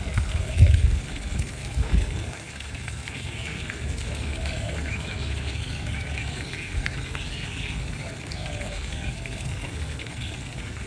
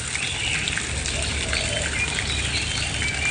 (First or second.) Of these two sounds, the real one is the second